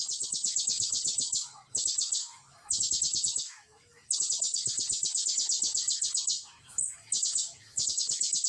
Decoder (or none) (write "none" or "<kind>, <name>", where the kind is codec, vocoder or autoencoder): autoencoder, DAC-VAE